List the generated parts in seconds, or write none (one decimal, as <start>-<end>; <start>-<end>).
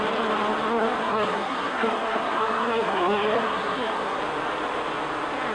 1.0-4.2